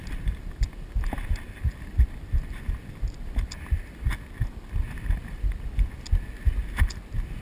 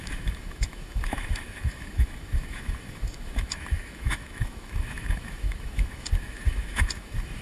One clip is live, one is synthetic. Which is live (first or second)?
first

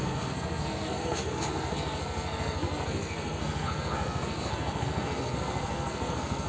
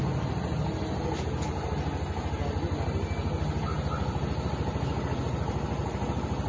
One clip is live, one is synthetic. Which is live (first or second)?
second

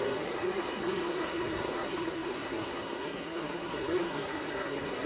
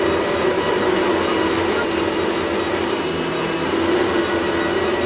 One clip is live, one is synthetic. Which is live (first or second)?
second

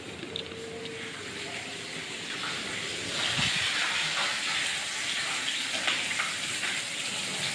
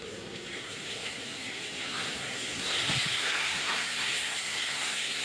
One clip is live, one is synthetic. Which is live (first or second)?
first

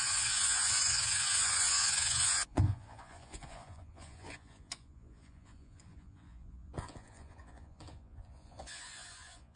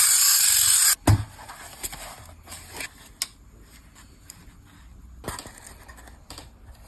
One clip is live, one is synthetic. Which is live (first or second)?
second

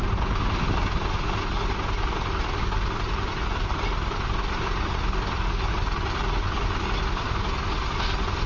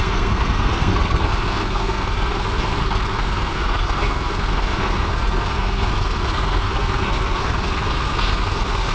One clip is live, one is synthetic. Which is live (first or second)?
first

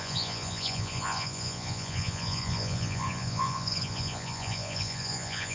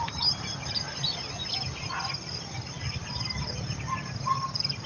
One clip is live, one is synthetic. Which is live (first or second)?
second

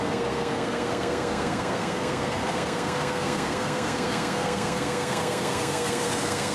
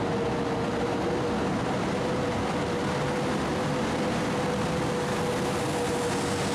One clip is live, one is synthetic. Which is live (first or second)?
second